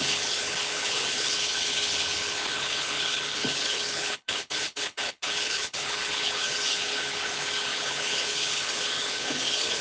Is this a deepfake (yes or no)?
yes